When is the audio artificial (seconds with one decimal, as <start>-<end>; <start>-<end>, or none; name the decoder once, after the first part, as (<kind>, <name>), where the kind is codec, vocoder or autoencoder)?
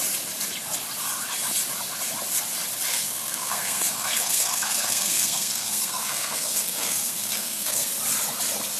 2.9-7.9 (codec, SNAC)